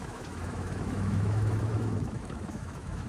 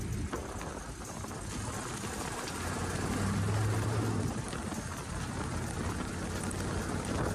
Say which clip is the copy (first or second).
first